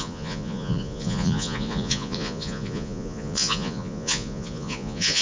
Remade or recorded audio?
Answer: remade